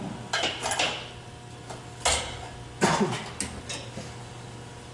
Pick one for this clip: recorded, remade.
recorded